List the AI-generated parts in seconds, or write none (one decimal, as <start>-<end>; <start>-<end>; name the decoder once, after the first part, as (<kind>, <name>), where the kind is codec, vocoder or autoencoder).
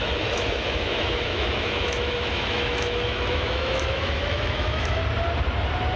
0.0-5.0 (autoencoder, DAC-VAE)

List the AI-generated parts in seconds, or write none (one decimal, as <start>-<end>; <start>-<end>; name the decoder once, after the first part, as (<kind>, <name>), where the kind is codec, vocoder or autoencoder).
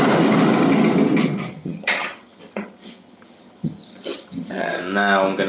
1.5-4.8 (vocoder, HiFi-GAN)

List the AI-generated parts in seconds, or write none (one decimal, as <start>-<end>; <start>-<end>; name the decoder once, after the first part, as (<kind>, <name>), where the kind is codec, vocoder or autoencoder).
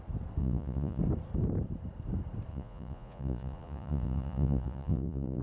0.4-1.0 (vocoder, Vocos); 2.5-5.4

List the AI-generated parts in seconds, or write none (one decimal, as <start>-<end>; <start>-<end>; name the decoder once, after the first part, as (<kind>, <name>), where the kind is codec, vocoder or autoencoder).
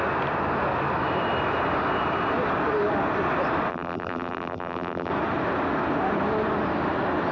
3.7-5.1 (vocoder, BigVGAN v2)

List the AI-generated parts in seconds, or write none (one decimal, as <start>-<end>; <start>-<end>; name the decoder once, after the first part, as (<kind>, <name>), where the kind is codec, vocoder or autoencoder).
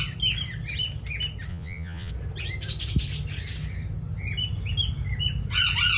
1.5-2.1 (vocoder, Vocos)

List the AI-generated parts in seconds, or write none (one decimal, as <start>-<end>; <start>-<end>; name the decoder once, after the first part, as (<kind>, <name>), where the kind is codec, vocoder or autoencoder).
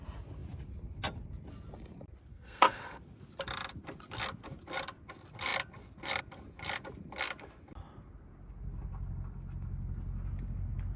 2.3-3.0 (codec, SNAC)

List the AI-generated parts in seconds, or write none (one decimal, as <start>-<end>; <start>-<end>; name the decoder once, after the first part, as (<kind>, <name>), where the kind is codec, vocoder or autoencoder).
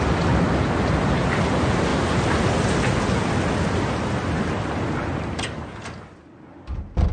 none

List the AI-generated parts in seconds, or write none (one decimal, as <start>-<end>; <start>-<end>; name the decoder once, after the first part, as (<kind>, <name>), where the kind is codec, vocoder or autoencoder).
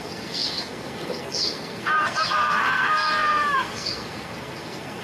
0.0-5.0 (codec, SNAC)